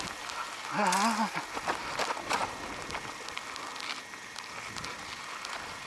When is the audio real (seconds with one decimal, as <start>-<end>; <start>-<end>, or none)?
0.0-5.9